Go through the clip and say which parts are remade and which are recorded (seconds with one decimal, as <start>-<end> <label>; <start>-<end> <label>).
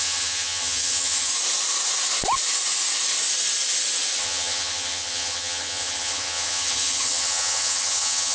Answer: 0.0-1.3 remade; 1.3-4.2 recorded; 4.2-8.3 remade